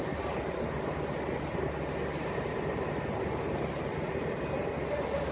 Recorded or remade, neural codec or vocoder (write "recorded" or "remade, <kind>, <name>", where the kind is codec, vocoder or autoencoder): recorded